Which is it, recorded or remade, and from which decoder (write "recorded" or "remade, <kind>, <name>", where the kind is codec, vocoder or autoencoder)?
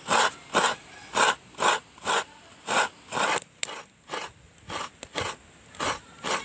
recorded